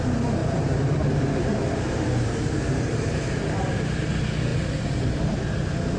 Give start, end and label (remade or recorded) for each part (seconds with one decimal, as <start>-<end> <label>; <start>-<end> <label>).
0.0-0.4 recorded; 0.4-4.0 remade; 4.0-6.0 recorded